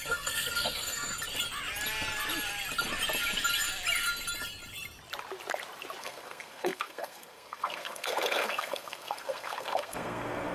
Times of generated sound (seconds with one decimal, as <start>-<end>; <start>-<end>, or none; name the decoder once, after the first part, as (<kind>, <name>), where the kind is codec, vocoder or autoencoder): 0.0-1.1 (codec, SNAC); 6.0-10.5